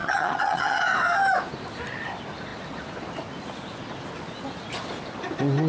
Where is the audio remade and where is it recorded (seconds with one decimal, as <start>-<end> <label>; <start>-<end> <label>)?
0.0-0.8 remade; 0.8-5.7 recorded

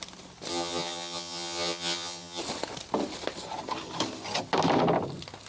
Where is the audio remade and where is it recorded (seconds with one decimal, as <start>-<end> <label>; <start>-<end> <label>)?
0.0-0.5 recorded; 0.5-2.4 remade; 2.4-5.5 recorded

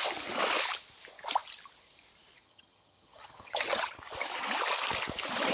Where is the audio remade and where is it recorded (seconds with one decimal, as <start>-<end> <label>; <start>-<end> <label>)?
0.0-2.4 recorded; 2.4-3.9 remade; 3.9-5.5 recorded

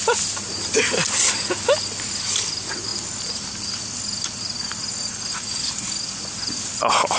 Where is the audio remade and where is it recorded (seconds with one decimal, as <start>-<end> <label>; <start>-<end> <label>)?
0.0-7.2 recorded

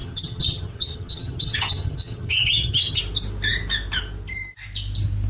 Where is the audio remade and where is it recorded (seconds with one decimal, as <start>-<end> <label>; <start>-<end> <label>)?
0.0-3.0 remade; 3.0-5.3 recorded

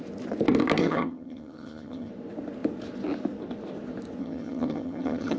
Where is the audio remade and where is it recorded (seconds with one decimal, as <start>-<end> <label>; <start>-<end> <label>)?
0.0-0.8 recorded; 0.8-2.1 remade; 2.1-4.2 recorded; 4.2-5.4 remade

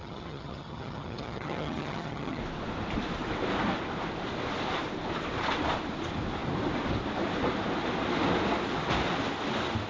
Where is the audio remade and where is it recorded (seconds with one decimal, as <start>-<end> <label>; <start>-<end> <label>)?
0.0-2.4 remade; 2.4-9.9 recorded